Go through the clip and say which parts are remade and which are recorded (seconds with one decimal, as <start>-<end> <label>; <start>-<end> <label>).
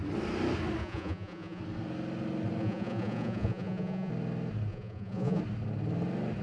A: 0.0-0.8 recorded; 0.8-1.6 remade; 1.6-2.6 recorded; 2.6-4.1 remade; 4.1-4.7 recorded; 4.7-5.4 remade; 5.4-6.4 recorded